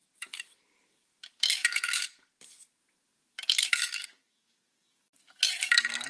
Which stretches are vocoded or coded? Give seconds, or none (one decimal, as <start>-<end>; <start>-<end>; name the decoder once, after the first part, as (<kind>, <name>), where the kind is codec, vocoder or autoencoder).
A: 0.0-6.1 (codec, DAC)